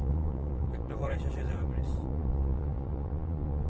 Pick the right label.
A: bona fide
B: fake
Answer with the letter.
B